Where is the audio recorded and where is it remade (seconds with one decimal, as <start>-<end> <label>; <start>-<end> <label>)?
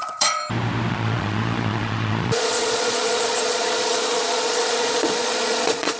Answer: 0.0-0.4 remade; 0.4-0.9 recorded; 0.9-6.0 remade